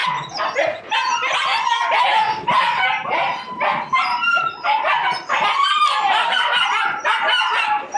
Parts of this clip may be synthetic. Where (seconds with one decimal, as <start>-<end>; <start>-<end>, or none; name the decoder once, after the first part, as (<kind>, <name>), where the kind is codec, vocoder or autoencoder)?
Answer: none